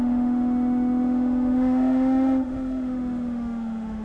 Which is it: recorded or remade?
remade